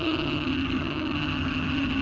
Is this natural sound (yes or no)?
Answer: no